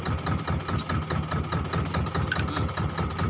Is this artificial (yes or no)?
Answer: no